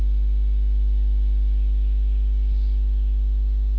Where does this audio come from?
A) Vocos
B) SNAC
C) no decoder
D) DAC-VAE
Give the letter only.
C